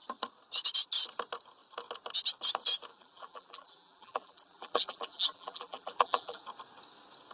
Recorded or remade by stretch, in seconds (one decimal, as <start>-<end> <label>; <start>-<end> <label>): 0.0-2.9 recorded; 2.9-6.4 remade; 6.4-7.3 recorded